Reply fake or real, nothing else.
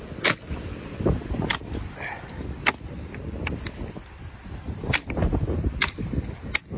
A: fake